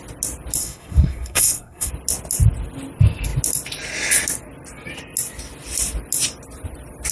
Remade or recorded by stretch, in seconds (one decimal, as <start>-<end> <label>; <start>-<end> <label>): 0.0-0.6 recorded; 0.6-1.9 remade; 1.9-7.1 recorded